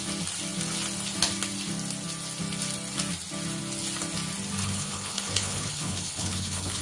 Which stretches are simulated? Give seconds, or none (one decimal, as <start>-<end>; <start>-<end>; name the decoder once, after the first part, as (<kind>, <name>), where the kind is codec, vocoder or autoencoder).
4.6-6.8 (codec, HILCodec)